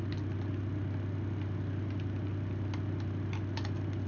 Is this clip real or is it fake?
real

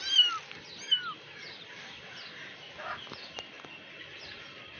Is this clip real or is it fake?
real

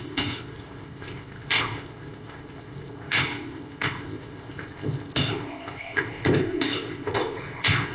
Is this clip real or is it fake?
fake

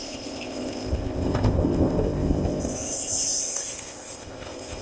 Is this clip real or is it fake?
fake